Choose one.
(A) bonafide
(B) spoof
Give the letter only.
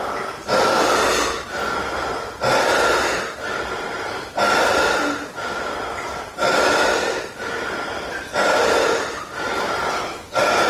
A